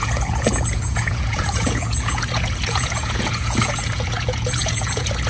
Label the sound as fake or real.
fake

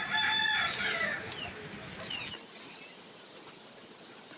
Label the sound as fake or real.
real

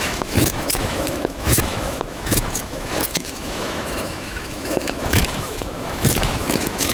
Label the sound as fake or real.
fake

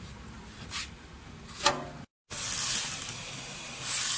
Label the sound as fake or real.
real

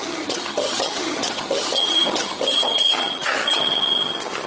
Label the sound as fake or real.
fake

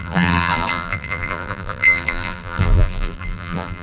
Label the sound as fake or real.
fake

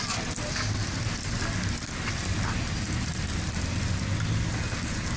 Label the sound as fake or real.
real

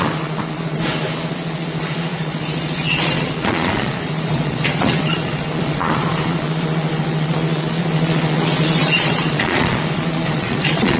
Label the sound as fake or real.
fake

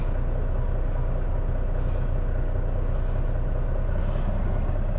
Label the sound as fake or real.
real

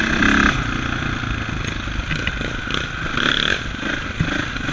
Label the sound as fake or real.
real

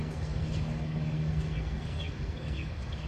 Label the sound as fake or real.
fake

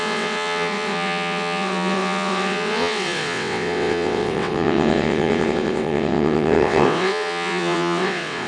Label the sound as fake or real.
fake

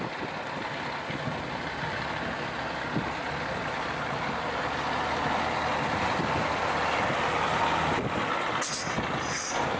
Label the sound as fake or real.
real